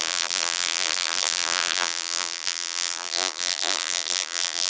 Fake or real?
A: fake